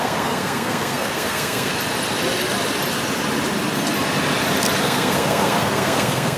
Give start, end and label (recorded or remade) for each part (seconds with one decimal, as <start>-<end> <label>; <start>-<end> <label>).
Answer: 0.0-1.7 remade; 1.7-4.8 recorded; 4.8-6.4 remade

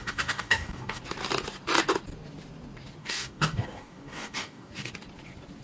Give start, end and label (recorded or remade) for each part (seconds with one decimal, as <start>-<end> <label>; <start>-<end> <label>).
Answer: 0.0-1.0 remade; 1.0-3.0 recorded; 3.0-4.9 remade; 4.9-5.6 recorded

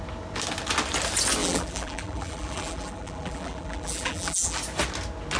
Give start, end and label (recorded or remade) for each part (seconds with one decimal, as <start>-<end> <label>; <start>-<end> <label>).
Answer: 0.0-1.4 recorded; 1.4-4.6 remade; 4.6-5.4 recorded

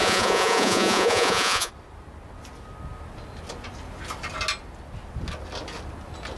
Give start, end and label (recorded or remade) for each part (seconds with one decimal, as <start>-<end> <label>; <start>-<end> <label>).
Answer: 0.0-1.7 remade; 1.7-6.4 recorded